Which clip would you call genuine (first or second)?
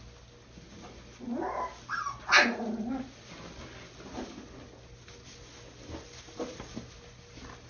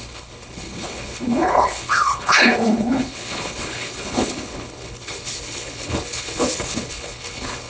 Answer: first